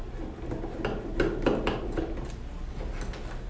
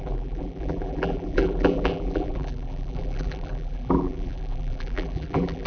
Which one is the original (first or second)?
first